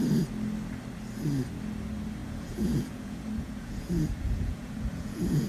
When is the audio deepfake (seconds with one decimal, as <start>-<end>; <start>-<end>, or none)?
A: 2.2-5.5